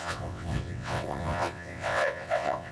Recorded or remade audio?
remade